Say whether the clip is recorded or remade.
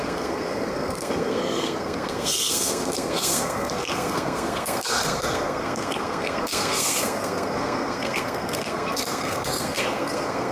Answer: remade